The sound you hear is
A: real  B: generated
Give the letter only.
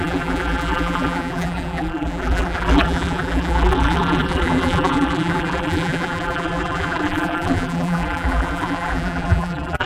B